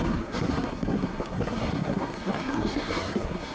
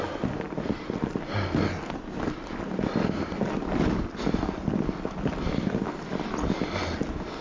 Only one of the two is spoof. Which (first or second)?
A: first